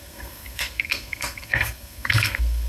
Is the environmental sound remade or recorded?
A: remade